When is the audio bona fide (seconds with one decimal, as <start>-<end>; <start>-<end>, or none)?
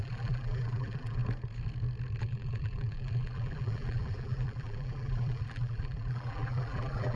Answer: 1.2-2.2